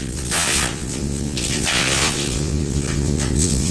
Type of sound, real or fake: fake